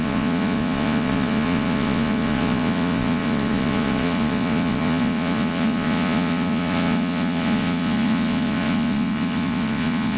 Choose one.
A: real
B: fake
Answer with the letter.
B